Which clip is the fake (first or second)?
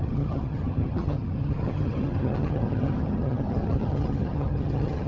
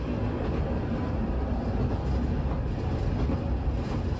first